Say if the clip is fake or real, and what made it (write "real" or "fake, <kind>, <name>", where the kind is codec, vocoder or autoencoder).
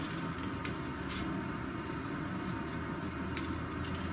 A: real